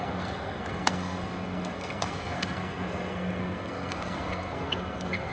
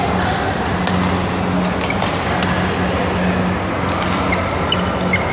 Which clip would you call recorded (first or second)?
second